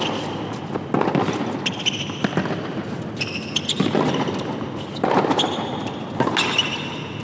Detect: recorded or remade recorded